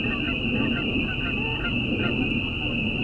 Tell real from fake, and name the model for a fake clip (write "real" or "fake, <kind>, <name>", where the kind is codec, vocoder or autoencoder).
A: real